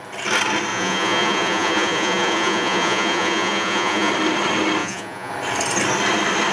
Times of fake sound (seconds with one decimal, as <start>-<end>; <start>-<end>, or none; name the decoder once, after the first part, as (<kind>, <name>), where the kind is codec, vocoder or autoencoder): 0.7-4.1 (vocoder, Vocos); 4.8-5.3